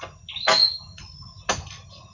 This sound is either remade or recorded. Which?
recorded